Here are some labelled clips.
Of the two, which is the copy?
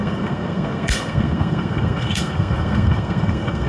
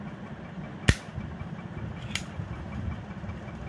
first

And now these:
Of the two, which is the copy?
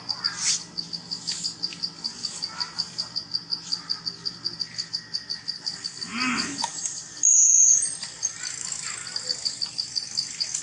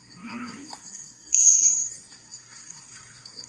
second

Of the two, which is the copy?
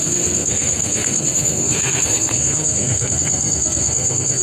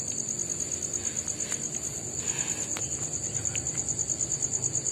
first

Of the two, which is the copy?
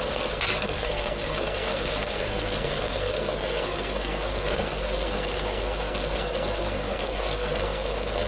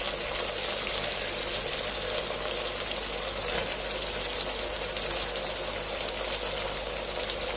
first